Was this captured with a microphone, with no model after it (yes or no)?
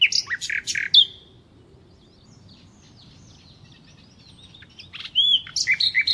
yes